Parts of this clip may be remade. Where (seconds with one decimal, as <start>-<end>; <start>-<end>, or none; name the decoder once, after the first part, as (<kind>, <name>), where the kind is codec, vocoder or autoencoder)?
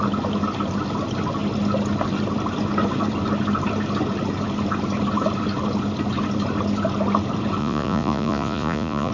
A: 7.6-9.1 (vocoder, Vocos)